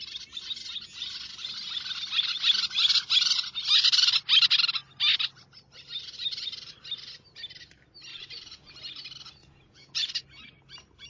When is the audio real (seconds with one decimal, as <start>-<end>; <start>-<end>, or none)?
0.0-8.1; 8.7-9.4; 10.1-11.1

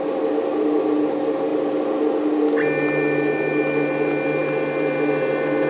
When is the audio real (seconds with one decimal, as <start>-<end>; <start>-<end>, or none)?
0.0-5.7